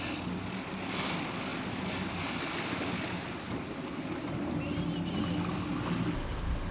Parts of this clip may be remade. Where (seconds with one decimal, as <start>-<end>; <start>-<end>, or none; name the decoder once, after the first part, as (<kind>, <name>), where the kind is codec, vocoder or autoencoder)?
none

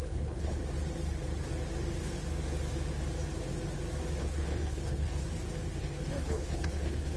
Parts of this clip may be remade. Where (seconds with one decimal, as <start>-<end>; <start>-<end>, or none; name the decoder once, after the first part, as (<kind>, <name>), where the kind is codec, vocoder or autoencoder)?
0.0-0.6 (codec, HILCodec); 4.2-5.2; 5.8-7.2

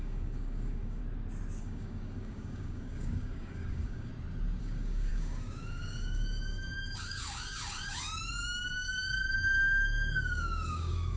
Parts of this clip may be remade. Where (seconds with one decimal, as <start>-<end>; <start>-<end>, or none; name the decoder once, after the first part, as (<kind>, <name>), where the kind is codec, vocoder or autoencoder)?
0.0-1.0 (codec, DAC); 1.6-4.1; 4.6-11.2

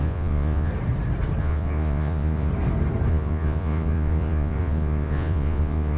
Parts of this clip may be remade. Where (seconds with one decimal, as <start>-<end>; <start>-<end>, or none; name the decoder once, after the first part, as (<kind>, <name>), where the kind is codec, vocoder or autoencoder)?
0.0-0.7 (vocoder, Vocos); 1.4-2.5; 3.1-6.0

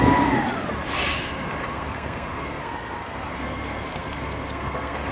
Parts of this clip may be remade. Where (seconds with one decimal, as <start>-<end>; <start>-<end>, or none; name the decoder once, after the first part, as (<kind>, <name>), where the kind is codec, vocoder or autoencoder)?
1.6-5.1 (codec, SNAC)